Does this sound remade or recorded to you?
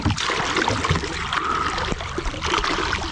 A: recorded